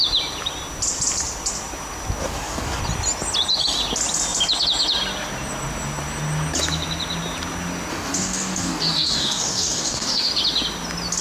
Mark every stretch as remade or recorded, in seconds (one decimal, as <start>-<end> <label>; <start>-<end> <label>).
0.0-2.2 recorded; 2.2-2.8 remade; 2.8-7.9 recorded; 7.9-10.3 remade; 10.3-11.2 recorded